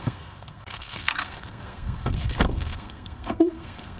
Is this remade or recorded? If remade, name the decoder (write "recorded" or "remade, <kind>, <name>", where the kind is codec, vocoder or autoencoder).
remade, codec, SNAC